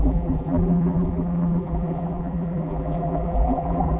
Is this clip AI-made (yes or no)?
yes